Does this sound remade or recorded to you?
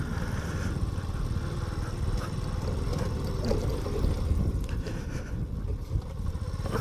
recorded